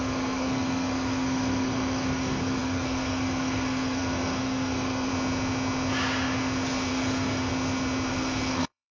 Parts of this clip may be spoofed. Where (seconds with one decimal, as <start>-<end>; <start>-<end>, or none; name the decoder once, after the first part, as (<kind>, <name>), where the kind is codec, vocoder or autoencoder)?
0.0-5.1 (codec, SNAC); 6.9-7.5; 8.1-8.9